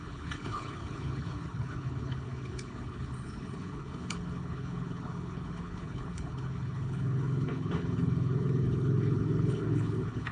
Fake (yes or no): yes